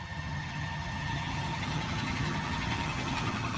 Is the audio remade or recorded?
remade